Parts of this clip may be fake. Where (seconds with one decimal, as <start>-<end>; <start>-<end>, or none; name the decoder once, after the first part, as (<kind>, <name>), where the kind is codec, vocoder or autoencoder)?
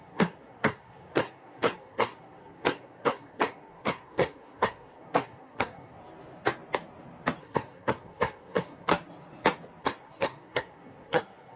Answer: 0.0-6.0 (codec, SNAC); 7.4-8.9; 9.8-11.6